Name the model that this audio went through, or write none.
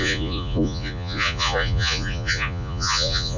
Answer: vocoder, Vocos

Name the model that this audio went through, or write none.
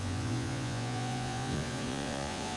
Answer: vocoder, Vocos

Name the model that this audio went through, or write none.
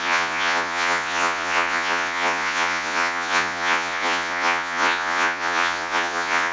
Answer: vocoder, Vocos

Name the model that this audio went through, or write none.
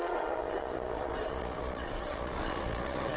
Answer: vocoder, Vocos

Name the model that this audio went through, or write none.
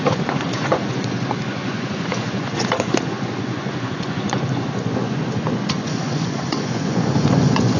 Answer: vocoder, Vocos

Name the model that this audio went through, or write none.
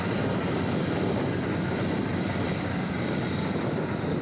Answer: none